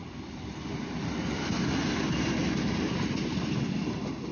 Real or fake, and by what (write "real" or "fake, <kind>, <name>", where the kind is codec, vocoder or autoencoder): real